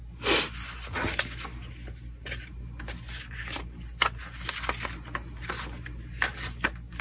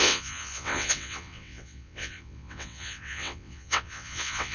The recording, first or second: first